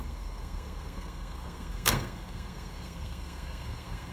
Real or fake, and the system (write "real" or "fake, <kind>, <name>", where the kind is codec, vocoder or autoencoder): fake, codec, SNAC